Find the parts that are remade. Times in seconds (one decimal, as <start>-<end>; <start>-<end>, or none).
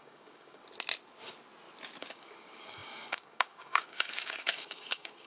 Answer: 0.0-0.6; 2.0-5.3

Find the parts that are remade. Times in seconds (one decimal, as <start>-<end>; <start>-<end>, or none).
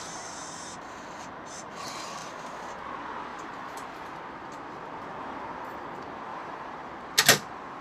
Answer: 3.3-4.2; 6.3-6.9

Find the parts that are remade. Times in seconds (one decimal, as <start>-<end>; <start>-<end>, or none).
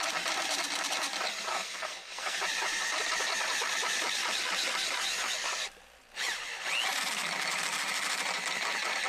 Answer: 1.5-2.4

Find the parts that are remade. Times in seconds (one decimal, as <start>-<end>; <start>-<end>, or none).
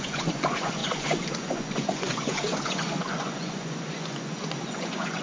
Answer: 0.0-5.2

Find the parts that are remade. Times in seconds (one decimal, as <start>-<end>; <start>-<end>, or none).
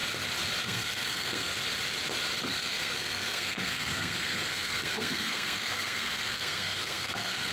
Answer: 0.6-1.5; 2.5-7.5